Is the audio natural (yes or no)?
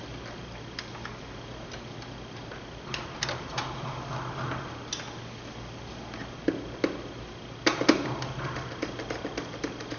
yes